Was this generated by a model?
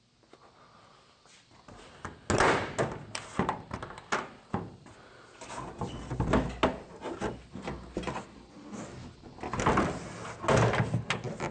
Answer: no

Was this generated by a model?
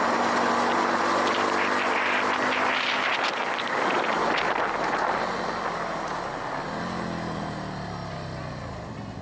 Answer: no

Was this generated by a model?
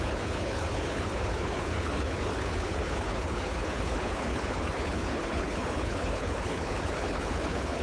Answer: yes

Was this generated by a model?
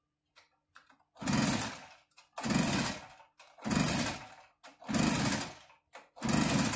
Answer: no